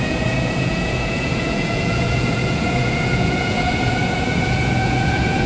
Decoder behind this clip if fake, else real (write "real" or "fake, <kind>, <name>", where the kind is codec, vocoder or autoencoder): fake, vocoder, Vocos